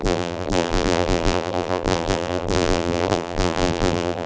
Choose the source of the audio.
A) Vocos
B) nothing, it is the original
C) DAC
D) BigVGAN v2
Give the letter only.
D